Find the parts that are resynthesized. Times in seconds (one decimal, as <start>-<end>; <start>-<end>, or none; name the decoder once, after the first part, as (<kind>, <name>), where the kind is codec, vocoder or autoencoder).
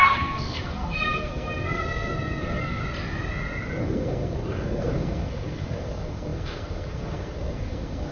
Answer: 0.0-2.8 (codec, SNAC); 3.8-8.1